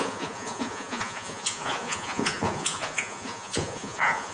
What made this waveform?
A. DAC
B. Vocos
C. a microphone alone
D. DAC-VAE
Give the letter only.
B